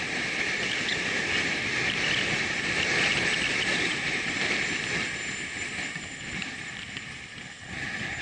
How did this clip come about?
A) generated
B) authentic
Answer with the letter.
B